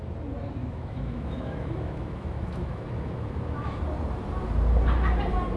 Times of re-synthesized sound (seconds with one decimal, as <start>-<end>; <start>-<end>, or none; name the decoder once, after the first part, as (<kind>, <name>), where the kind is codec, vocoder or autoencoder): 0.6-3.8 (autoencoder, DAC-VAE)